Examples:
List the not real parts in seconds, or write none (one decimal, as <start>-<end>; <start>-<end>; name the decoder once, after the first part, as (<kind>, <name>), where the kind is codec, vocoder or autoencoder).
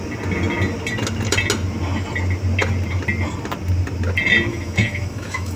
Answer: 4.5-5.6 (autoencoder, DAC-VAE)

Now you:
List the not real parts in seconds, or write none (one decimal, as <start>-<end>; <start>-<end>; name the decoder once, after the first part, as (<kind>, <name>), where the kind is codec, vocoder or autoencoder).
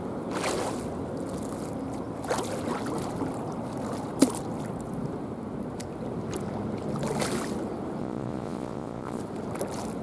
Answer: 8.0-9.2 (vocoder, Vocos)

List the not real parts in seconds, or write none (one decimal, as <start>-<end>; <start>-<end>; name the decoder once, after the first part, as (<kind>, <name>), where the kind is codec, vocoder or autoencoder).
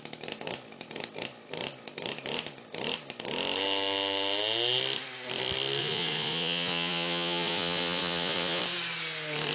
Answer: 5.8-8.6 (vocoder, Vocos)